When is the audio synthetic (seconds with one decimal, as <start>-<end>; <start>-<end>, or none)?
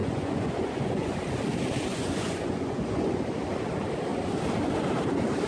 0.0-1.1; 1.9-3.2